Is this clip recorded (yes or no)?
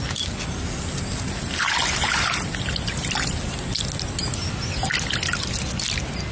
yes